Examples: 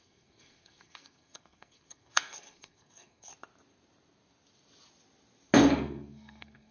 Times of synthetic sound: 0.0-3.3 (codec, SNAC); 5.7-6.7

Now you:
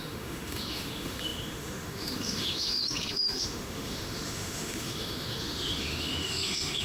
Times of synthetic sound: 0.0-6.8 (autoencoder, DAC-VAE)

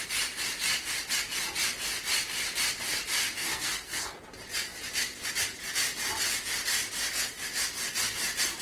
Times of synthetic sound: 3.2-4.2 (codec, SNAC)

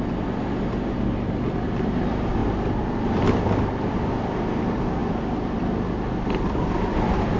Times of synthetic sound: none

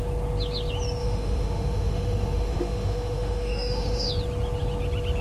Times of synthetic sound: 1.0-4.1 (autoencoder, DAC-VAE)

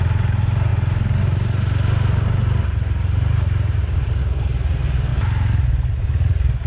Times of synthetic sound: none

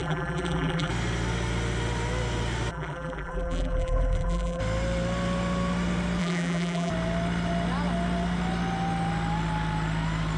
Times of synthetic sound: 0.0-0.9 (vocoder, BigVGAN v2); 2.7-4.6; 6.2-6.9

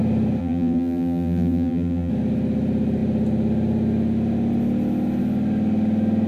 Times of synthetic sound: 0.4-2.1 (vocoder, BigVGAN v2)